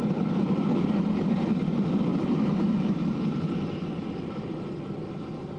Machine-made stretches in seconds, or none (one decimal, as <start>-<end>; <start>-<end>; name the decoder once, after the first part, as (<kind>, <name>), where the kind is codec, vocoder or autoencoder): none